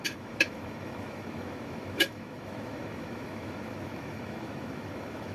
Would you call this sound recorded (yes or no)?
no